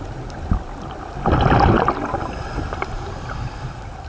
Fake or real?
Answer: real